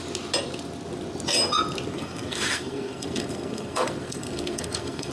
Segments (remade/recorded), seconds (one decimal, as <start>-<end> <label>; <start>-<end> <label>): 0.0-1.9 recorded; 1.9-5.1 remade